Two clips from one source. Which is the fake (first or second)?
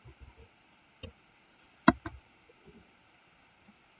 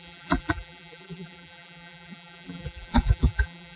second